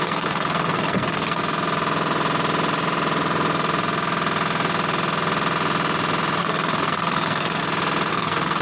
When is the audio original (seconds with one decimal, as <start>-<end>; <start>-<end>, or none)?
1.4-6.4; 7.6-8.1